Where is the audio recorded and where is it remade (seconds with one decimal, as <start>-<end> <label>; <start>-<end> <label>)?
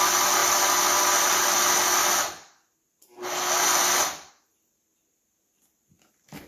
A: 0.0-6.5 recorded